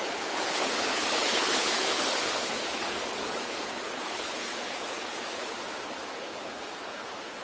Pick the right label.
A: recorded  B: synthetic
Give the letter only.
B